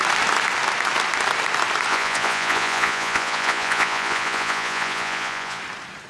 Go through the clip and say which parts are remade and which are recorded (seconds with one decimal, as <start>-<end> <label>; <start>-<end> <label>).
0.0-1.9 recorded; 1.9-5.6 remade; 5.6-6.1 recorded